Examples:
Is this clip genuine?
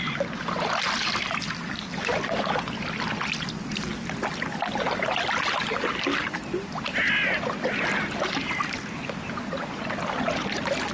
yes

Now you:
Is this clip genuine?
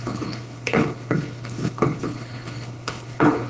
no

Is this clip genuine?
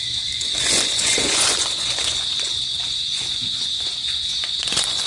no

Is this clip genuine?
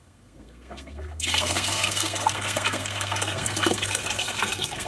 no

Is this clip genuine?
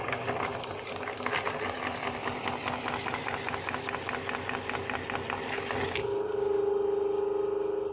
yes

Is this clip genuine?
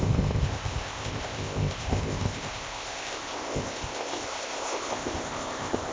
no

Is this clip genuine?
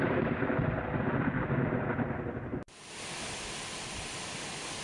yes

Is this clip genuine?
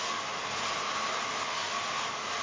yes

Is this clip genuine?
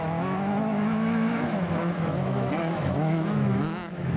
no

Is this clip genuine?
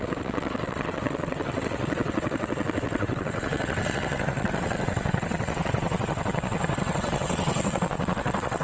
no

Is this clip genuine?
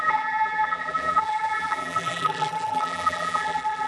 no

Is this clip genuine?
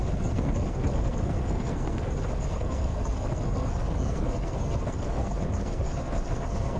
no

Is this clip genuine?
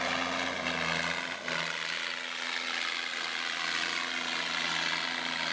yes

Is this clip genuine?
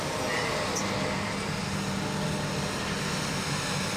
yes